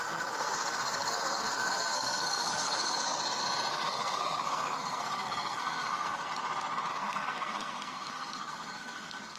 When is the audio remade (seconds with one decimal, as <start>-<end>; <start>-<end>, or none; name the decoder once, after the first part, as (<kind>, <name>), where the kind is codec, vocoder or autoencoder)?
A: 0.0-3.2 (codec, SNAC); 3.7-6.3; 6.9-9.4